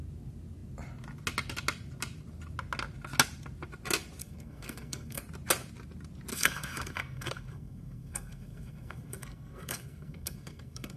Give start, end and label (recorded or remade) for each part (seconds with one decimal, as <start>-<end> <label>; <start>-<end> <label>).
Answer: 0.0-4.2 recorded; 4.2-5.2 remade; 5.2-6.3 recorded; 6.3-11.0 remade